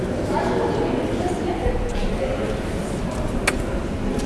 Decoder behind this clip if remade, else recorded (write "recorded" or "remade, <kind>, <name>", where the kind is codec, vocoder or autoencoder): recorded